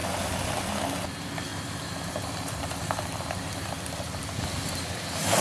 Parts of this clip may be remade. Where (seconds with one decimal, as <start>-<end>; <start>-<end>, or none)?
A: 0.0-0.6; 1.5-4.7